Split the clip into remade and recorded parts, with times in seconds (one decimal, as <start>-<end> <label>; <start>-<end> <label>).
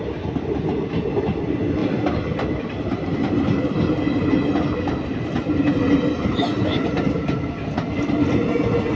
0.0-9.0 recorded